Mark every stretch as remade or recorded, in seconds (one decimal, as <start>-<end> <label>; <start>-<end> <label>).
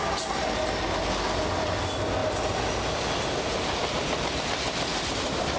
0.0-5.6 recorded